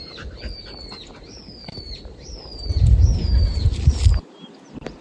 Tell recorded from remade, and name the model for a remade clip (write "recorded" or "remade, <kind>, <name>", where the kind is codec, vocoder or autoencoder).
recorded